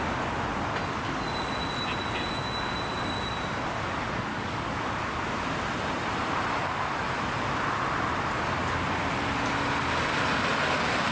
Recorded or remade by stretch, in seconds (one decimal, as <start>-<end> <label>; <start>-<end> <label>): 0.0-4.3 recorded; 4.3-4.8 remade; 4.8-11.1 recorded

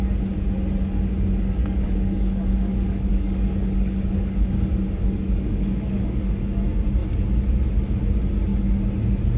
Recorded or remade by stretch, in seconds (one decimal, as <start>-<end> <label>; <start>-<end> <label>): 0.0-1.6 recorded; 1.6-6.4 remade; 6.4-9.4 recorded

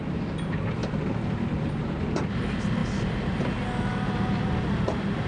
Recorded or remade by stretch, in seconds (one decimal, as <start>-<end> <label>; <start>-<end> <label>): 0.0-5.3 recorded

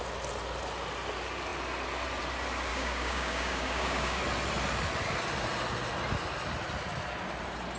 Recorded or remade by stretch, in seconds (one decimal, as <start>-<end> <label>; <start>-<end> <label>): 0.0-2.7 recorded; 2.7-4.2 remade; 4.2-7.8 recorded

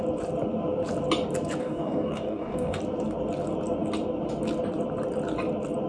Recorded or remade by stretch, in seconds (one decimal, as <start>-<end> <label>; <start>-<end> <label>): 0.0-1.6 recorded; 1.6-2.8 remade; 2.8-5.9 recorded

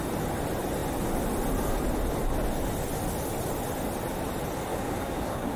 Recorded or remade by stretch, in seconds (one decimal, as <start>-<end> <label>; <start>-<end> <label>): 0.0-4.7 recorded; 4.7-5.6 remade

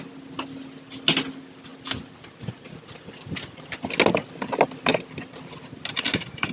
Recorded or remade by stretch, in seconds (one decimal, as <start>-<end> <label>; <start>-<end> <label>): 0.0-6.5 recorded